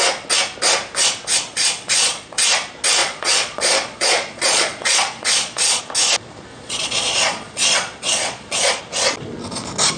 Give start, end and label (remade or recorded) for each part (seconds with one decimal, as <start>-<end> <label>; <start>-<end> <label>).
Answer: 0.0-1.5 recorded; 1.5-2.4 remade; 2.4-3.0 recorded; 3.0-5.8 remade; 5.8-6.5 recorded; 6.5-8.8 remade; 8.8-10.0 recorded